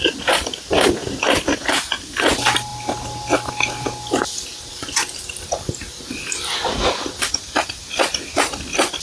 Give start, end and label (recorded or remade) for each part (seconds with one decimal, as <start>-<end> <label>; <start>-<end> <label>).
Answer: 0.0-4.7 recorded; 4.7-6.7 remade; 6.7-9.0 recorded